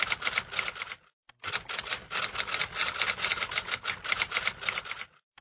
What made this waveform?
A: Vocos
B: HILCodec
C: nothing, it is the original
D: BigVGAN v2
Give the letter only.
C